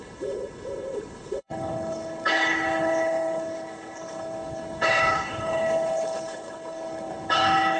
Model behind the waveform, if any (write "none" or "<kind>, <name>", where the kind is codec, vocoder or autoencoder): codec, HILCodec